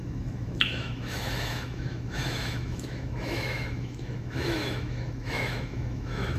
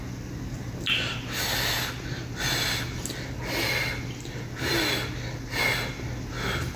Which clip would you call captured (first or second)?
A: second